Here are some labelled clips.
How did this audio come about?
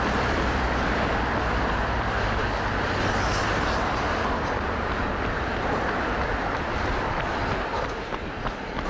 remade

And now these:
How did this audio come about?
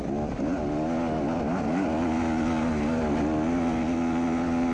recorded